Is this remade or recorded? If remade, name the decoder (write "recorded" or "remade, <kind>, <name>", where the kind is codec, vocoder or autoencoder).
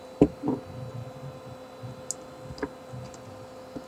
recorded